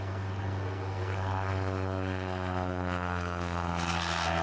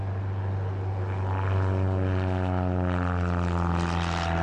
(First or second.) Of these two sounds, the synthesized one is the first